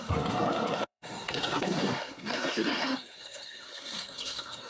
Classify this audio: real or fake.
fake